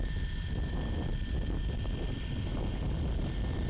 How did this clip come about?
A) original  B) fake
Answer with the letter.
A